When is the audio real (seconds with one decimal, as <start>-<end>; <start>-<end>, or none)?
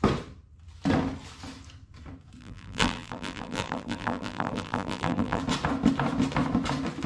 0.0-2.4; 5.4-7.1